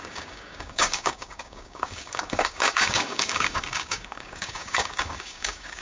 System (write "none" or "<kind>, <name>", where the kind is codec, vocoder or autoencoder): codec, DAC